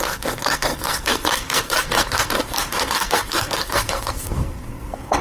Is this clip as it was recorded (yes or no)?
no